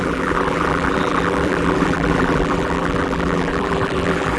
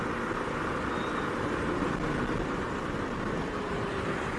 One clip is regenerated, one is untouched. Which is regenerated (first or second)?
first